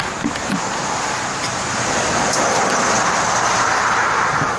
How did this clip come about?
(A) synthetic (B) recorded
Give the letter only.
B